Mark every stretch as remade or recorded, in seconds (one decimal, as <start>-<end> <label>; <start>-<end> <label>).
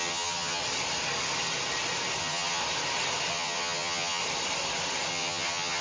0.0-0.6 remade; 0.6-2.2 recorded; 2.2-2.6 remade; 2.6-3.3 recorded; 3.3-4.2 remade; 4.2-5.1 recorded; 5.1-5.8 remade